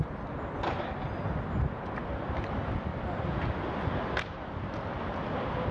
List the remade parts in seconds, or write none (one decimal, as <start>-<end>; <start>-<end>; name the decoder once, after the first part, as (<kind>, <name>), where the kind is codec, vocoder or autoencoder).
none